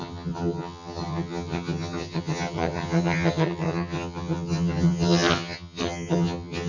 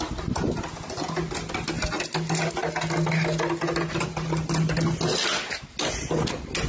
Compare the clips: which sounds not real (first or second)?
first